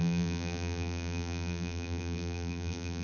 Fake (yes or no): yes